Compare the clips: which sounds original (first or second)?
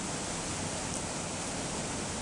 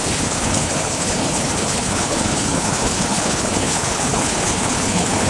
first